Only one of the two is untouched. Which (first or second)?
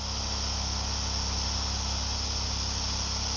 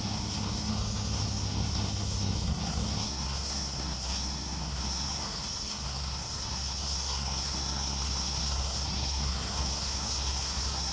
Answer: first